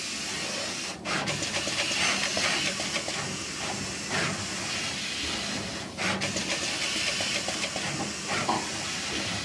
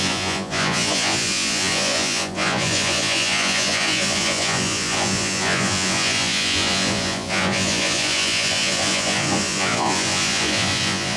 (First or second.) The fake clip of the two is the second